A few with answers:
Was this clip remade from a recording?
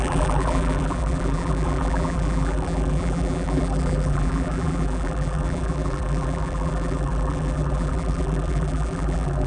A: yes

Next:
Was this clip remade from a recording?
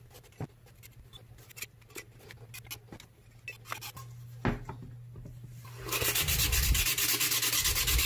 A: no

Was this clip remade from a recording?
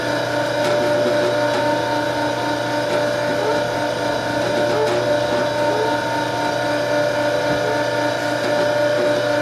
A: no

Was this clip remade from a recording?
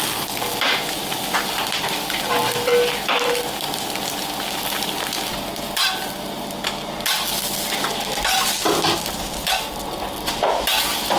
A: no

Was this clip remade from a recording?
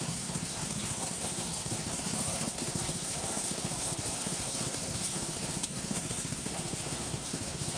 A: yes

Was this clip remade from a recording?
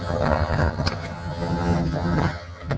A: yes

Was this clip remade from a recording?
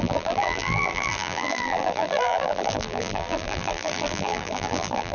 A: yes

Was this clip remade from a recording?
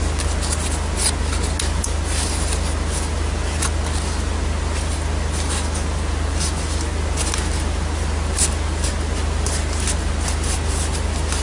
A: no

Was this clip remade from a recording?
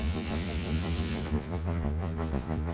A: yes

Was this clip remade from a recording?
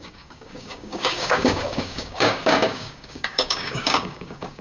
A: yes